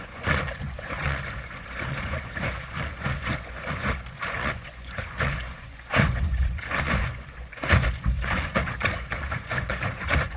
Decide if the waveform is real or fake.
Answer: fake